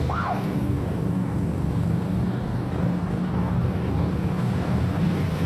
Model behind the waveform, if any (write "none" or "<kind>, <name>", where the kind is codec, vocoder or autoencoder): codec, DAC